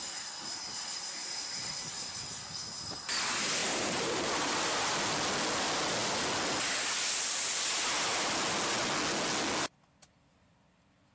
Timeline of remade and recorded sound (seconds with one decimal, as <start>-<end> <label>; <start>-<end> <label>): 0.0-1.2 recorded; 1.2-2.0 remade; 2.0-3.6 recorded; 3.6-4.7 remade; 4.7-11.1 recorded